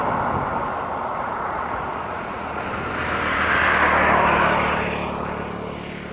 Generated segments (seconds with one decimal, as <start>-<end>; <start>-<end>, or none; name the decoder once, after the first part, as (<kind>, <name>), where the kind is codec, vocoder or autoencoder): 1.1-2.6 (vocoder, Vocos)